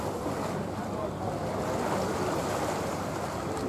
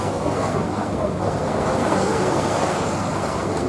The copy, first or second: second